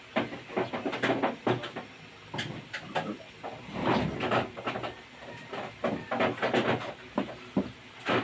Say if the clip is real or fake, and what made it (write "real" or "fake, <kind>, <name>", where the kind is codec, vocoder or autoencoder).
real